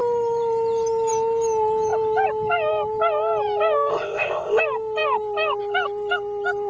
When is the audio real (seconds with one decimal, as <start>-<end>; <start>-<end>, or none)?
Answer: 0.0-3.9; 4.6-6.7